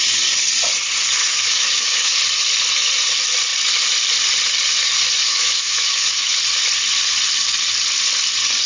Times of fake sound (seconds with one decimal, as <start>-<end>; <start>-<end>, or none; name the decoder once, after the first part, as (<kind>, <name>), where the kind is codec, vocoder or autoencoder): 1.2-2.2 (autoencoder, DAC-VAE); 5.2-6.4